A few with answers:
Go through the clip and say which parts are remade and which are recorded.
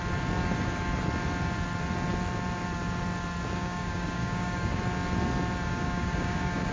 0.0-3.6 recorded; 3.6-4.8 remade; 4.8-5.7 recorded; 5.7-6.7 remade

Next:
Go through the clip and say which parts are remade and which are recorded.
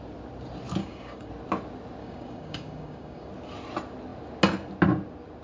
0.0-0.8 recorded; 0.8-1.3 remade; 1.3-2.0 recorded; 2.0-3.3 remade; 3.3-5.4 recorded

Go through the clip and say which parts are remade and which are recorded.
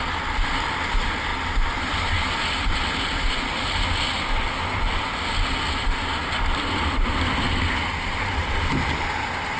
0.0-9.6 recorded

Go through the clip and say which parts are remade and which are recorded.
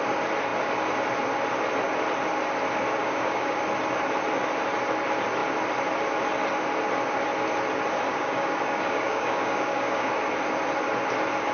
0.0-3.0 recorded; 3.0-3.6 remade; 3.6-8.1 recorded; 8.1-10.1 remade; 10.1-11.5 recorded